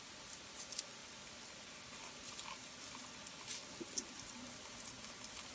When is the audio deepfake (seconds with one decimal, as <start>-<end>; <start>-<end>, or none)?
none